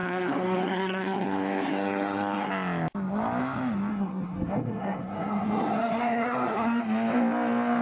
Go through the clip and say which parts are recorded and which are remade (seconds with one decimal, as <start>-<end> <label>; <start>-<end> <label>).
0.0-2.5 remade; 2.5-3.9 recorded; 3.9-6.8 remade; 6.8-7.8 recorded